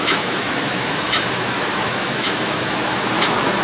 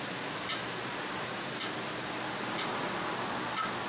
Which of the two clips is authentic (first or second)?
second